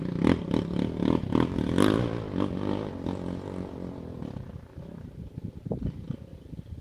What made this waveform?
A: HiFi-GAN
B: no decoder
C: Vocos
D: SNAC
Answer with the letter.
B